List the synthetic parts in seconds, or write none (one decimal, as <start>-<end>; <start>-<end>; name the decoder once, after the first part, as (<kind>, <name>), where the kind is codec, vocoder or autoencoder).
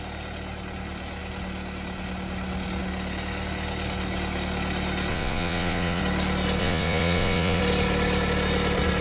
5.1-6.0 (vocoder, Vocos); 6.6-7.6